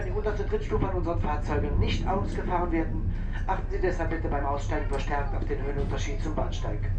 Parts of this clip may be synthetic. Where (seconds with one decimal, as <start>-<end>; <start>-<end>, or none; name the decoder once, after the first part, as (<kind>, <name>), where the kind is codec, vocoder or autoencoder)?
0.6-1.3 (vocoder, BigVGAN v2)